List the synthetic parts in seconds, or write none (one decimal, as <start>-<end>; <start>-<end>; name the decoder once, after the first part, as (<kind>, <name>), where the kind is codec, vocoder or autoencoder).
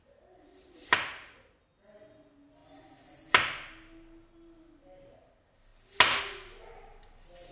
none